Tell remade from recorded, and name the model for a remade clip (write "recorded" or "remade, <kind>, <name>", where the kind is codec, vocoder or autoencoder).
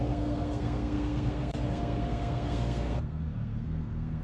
remade, codec, SNAC